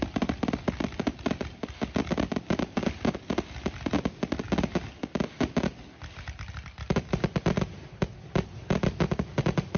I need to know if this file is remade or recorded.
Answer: recorded